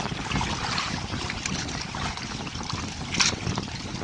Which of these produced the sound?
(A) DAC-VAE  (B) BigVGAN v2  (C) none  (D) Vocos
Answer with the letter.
C